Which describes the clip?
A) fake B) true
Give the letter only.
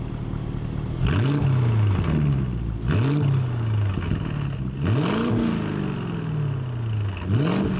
B